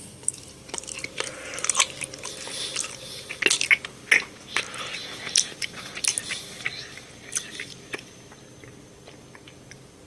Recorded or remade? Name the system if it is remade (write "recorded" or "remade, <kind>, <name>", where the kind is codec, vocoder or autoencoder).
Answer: recorded